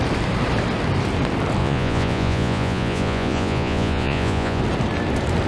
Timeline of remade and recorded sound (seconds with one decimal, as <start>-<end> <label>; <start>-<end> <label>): 0.0-1.6 recorded; 1.6-4.6 remade; 4.6-5.5 recorded

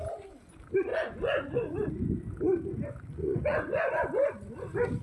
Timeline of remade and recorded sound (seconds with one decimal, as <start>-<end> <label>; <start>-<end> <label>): 0.0-0.9 recorded; 0.9-1.9 remade; 1.9-3.2 recorded; 3.2-3.9 remade; 3.9-5.0 recorded

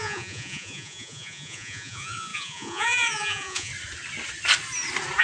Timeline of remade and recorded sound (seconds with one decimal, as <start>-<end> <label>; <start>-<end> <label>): 0.0-3.7 remade; 3.7-5.2 recorded

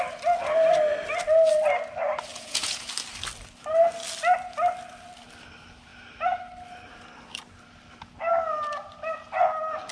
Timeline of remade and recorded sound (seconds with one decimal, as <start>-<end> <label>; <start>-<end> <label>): 0.0-2.3 recorded; 2.3-2.9 remade; 2.9-9.9 recorded